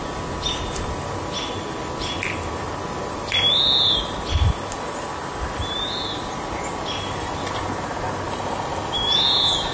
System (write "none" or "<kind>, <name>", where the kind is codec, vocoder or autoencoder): none